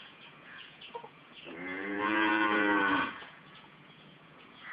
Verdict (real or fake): fake